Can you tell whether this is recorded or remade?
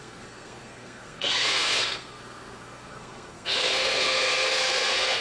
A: remade